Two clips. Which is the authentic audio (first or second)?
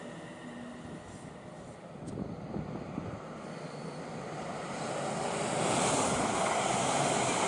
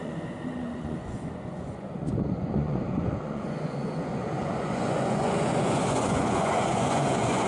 first